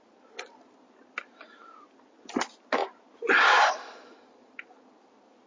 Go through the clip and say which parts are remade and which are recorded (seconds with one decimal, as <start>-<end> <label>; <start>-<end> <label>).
0.0-5.5 recorded